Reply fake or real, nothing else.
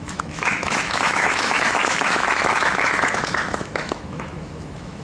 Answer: fake